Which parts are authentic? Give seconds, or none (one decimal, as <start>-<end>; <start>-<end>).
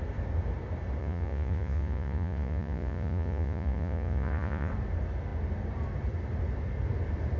0.0-1.0; 4.7-7.4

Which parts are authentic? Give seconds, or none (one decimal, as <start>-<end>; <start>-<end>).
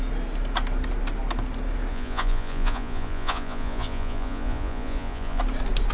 0.0-1.9; 5.4-5.9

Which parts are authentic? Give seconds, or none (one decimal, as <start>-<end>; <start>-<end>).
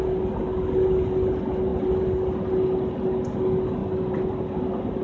0.0-5.0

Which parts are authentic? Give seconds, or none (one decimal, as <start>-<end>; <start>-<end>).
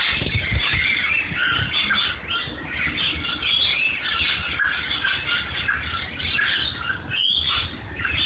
0.0-7.2; 7.7-8.3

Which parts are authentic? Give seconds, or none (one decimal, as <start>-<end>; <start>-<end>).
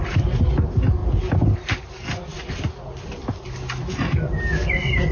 0.0-5.1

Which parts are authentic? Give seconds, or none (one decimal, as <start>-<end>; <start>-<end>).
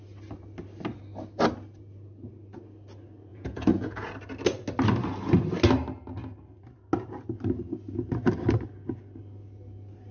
0.0-3.3; 4.1-10.1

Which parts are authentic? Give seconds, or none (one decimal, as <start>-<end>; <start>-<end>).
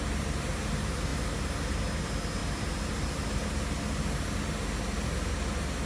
0.0-5.9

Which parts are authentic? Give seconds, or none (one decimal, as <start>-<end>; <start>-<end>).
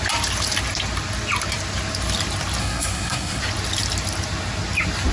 0.0-2.6; 3.4-5.1